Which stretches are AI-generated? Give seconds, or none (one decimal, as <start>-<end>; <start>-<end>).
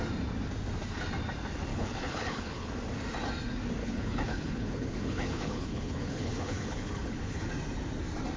1.7-2.7; 3.8-7.5